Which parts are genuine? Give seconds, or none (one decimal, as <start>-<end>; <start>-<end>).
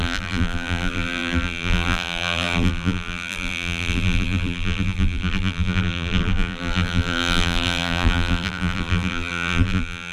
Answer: none